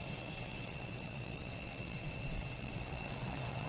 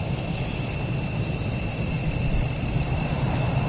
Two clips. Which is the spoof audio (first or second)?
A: first